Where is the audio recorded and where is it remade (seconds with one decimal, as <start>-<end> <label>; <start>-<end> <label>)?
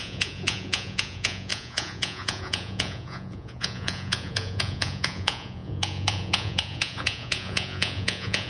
0.0-8.5 remade